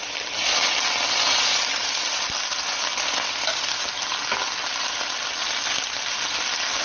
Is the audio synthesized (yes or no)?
no